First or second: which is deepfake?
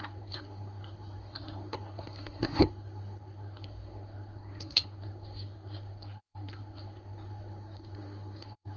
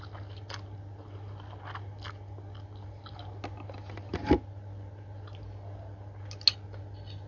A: first